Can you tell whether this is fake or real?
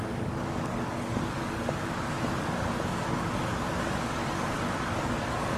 fake